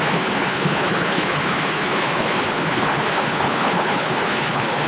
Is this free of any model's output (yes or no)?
no